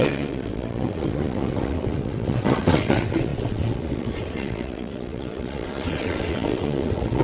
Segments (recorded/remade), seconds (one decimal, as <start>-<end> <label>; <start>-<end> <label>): 0.0-7.2 remade